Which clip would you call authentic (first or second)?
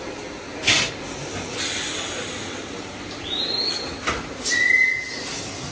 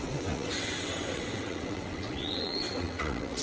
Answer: first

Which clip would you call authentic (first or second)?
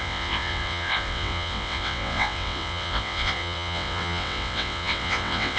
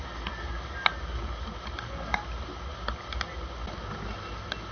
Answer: second